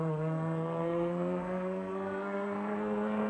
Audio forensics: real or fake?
fake